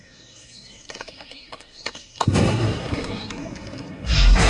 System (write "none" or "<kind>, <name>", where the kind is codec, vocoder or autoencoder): codec, SNAC